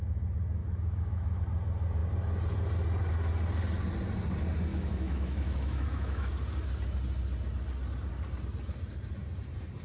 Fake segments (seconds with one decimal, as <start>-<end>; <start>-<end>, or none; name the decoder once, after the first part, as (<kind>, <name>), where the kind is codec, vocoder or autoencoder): 0.6-1.4 (autoencoder, DAC-VAE); 4.7-6.3